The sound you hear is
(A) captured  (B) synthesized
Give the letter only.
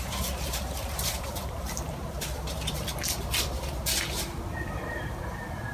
B